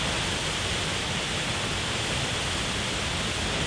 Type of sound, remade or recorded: recorded